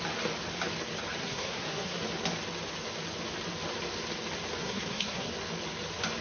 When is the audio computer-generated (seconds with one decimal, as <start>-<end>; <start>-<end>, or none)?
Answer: 1.2-2.0; 4.6-5.3